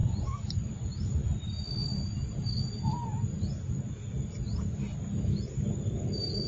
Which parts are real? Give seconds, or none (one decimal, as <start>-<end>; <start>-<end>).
0.7-6.5